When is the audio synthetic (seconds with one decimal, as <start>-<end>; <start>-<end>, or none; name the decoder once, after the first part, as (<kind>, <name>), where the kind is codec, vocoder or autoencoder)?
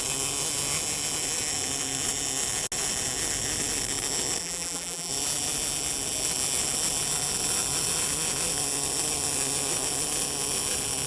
4.4-5.1 (vocoder, BigVGAN v2)